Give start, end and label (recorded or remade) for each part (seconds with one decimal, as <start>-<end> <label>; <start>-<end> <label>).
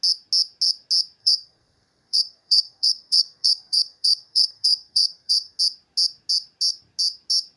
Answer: 0.0-1.2 recorded; 1.2-5.6 remade; 5.6-7.6 recorded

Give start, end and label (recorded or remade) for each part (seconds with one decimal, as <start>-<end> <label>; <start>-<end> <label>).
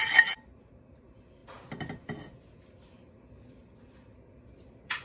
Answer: 0.0-5.0 recorded